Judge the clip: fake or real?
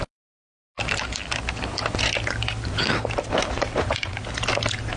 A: real